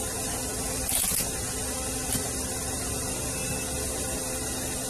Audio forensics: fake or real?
real